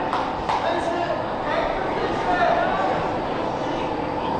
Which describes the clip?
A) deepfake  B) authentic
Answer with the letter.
B